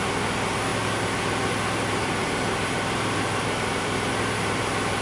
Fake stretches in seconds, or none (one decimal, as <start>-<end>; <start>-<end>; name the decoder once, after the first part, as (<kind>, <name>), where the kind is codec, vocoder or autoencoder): 2.2-4.1 (vocoder, BigVGAN v2)